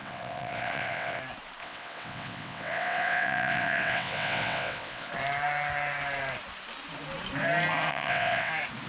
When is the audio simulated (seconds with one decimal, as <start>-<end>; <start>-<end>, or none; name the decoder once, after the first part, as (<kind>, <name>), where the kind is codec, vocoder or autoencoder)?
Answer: 0.0-1.2 (vocoder, WaveNeXt); 1.6-5.1; 7.9-8.5